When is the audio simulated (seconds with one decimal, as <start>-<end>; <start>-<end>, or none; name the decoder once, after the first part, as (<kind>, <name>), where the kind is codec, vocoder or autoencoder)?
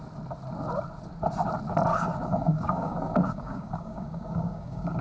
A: 1.9-5.0 (codec, DAC)